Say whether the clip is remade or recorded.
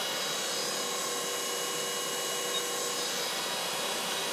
recorded